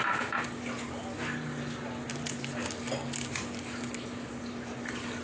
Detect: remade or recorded recorded